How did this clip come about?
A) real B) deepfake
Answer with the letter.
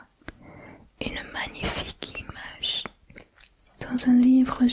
A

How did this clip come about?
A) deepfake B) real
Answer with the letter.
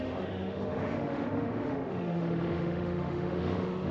A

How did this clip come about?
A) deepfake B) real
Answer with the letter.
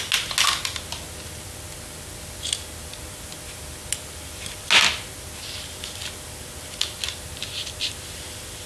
B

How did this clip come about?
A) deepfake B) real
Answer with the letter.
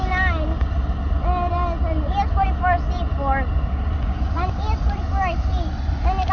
B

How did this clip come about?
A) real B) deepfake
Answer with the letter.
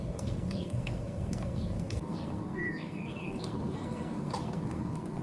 B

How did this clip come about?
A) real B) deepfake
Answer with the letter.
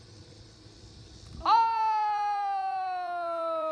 B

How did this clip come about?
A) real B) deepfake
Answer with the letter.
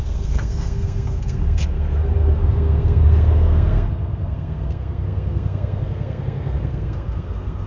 B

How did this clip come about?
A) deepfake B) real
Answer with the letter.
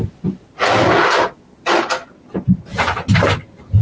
B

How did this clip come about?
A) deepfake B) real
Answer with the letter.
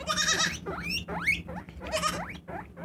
B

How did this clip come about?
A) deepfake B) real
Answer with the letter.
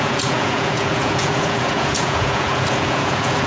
A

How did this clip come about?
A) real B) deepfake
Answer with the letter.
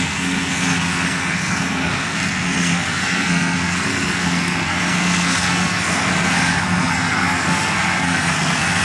B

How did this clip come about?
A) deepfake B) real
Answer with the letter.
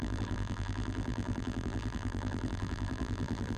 A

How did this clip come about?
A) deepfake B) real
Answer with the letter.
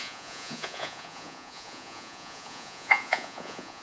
A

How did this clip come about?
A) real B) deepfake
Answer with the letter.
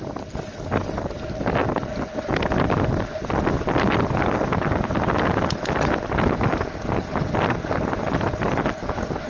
A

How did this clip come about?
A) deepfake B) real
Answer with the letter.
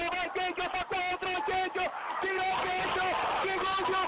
B